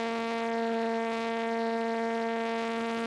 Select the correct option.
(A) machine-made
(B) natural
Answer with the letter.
B